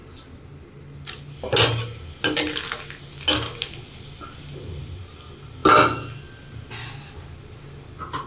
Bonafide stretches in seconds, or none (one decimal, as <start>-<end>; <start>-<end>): 0.0-8.3

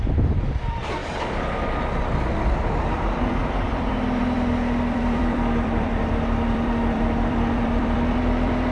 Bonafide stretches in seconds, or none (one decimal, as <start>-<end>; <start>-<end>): 1.0-2.8

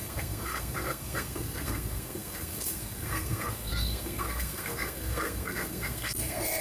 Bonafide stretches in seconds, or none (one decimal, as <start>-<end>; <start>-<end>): none

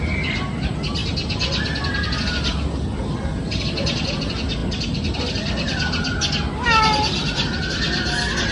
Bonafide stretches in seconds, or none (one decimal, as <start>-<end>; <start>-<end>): 0.0-8.5

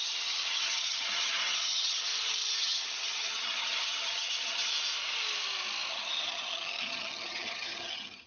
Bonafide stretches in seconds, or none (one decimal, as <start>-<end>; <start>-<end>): 2.1-2.6; 4.7-5.9

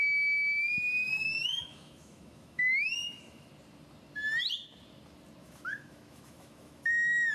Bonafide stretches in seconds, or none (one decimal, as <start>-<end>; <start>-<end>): 0.0-1.1; 3.5-5.4

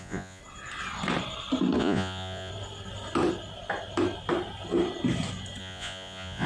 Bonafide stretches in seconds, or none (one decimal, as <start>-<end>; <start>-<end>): 0.4-1.8; 2.5-5.6

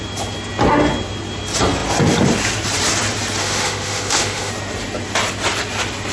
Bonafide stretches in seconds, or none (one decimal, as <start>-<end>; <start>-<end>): 0.0-3.4; 4.5-6.1